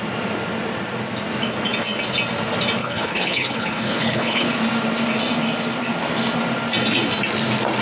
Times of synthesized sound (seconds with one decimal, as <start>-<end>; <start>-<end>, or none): 2.8-4.5